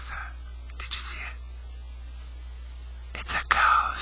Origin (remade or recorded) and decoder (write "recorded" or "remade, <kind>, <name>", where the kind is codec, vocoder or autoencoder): recorded